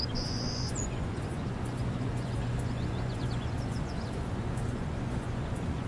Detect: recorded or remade remade